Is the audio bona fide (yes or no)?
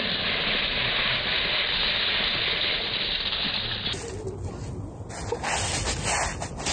yes